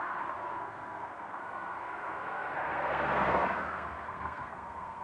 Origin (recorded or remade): remade